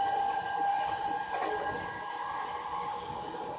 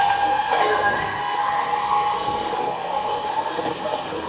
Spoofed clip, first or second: second